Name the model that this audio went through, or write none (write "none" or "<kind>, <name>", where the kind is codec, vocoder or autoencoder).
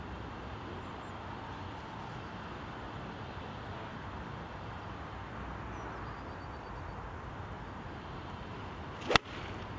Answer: none